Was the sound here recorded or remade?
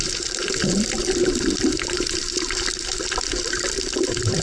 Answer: remade